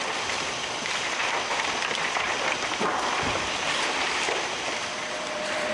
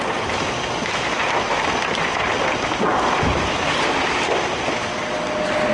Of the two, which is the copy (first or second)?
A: first